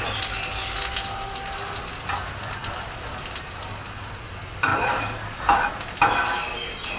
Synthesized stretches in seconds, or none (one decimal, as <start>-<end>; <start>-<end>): 4.7-5.7